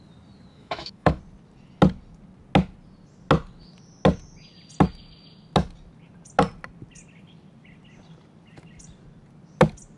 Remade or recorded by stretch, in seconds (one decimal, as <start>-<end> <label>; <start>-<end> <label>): 0.0-0.5 recorded; 0.5-1.2 remade; 1.2-10.0 recorded